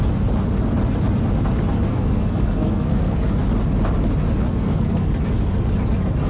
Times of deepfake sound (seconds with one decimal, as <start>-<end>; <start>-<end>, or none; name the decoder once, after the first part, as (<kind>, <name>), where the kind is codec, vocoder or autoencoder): 1.9-3.3 (codec, SNAC); 4.6-5.1